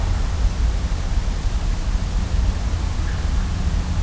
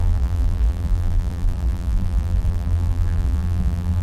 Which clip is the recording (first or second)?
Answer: first